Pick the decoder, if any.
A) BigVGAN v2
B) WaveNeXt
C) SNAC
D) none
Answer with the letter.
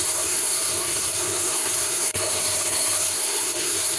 C